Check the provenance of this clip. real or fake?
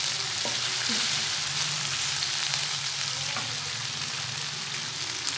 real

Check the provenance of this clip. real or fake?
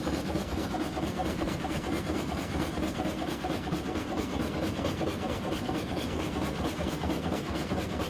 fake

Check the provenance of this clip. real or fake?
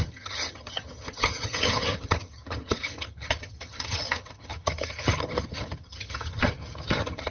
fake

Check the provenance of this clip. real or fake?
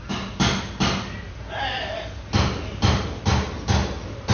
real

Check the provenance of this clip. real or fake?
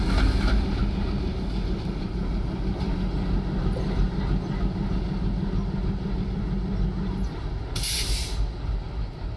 real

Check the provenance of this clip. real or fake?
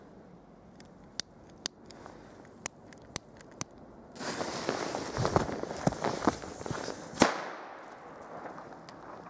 real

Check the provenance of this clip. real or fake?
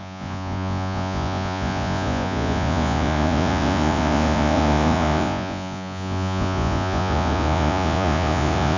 fake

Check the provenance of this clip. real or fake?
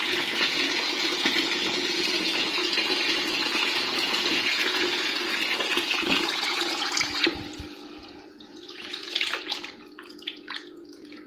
fake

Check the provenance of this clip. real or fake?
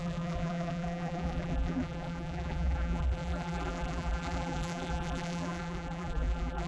fake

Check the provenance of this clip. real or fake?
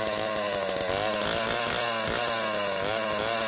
real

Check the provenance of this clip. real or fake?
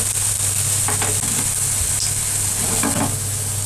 real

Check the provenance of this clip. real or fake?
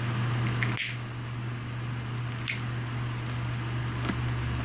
real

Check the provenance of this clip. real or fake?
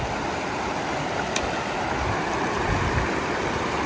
real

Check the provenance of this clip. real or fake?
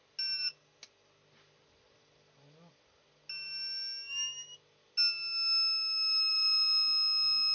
real